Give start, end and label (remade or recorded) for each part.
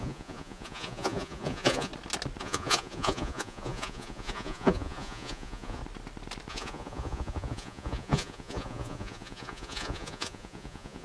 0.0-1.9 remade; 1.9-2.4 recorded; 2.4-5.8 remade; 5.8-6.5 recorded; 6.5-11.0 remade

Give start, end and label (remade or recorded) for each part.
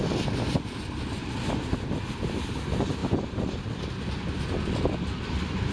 0.0-5.7 recorded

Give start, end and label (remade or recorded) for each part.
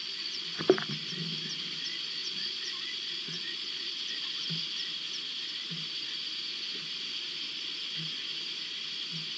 0.0-0.6 remade; 0.6-2.2 recorded; 2.2-4.1 remade; 4.1-9.4 recorded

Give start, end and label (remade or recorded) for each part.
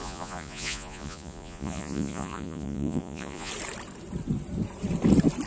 0.0-3.5 remade; 3.5-5.5 recorded